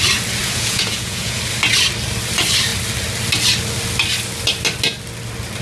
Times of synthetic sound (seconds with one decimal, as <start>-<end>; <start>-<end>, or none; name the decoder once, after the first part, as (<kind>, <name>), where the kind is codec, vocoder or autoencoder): 0.4-1.4 (vocoder, Vocos)